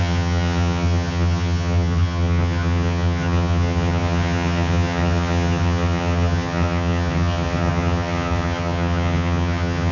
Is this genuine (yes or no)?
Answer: no